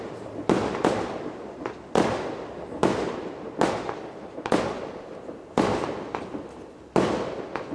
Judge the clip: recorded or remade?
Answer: recorded